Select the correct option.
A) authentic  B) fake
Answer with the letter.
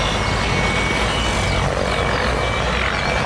A